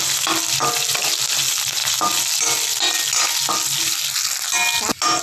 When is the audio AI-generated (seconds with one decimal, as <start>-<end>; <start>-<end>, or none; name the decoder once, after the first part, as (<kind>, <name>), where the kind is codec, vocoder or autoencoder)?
none